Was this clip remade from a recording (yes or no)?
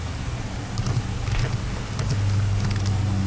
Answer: no